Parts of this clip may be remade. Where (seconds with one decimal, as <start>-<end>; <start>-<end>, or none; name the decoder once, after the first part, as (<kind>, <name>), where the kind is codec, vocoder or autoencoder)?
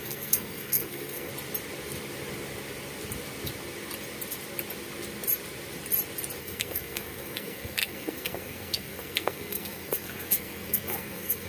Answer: 0.0-1.3 (codec, SNAC); 6.4-11.5